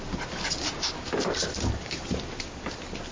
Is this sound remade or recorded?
recorded